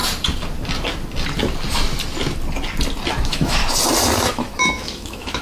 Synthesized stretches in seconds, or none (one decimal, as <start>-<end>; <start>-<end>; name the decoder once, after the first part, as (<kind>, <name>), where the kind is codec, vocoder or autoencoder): 3.1-3.6 (autoencoder, DAC-VAE); 4.3-5.4